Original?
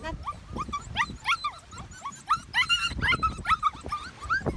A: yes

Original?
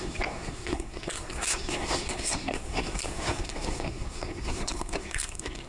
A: no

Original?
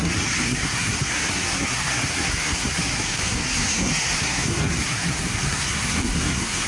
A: no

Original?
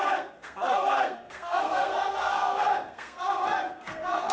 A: no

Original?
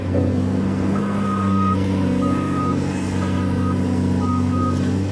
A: no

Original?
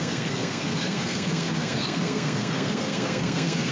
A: no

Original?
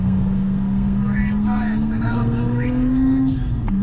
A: no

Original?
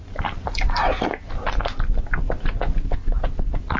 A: yes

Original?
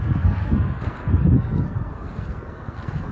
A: no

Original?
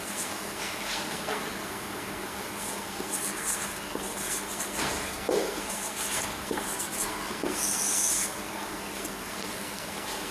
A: no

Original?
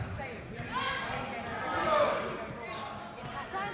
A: yes